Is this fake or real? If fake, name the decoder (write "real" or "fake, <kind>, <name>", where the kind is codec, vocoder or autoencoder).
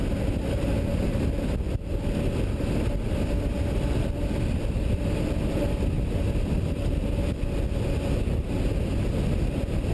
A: real